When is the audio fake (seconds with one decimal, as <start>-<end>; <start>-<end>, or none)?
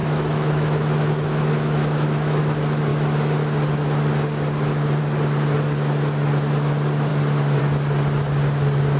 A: 0.0-2.4